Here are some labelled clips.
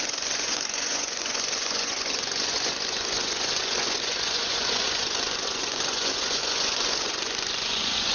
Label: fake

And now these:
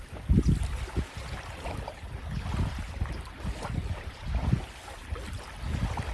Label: real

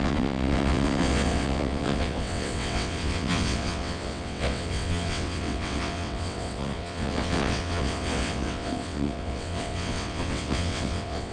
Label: fake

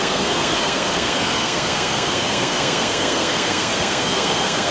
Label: fake